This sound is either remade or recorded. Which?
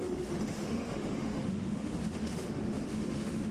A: remade